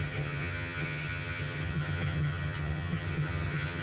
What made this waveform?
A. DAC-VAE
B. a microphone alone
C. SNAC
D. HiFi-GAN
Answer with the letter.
D